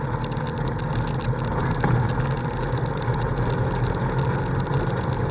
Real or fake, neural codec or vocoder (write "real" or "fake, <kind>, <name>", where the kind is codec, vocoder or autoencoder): real